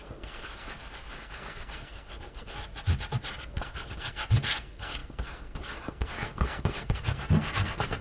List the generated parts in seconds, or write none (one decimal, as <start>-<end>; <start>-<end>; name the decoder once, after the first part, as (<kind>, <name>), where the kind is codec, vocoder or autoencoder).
0.0-2.7 (codec, SNAC); 3.5-8.0